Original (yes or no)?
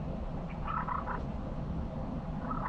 yes